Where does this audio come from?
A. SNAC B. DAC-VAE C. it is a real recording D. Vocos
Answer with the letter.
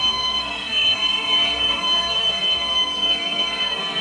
A